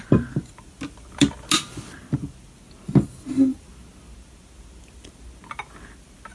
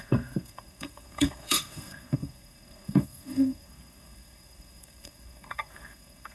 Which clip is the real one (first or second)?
first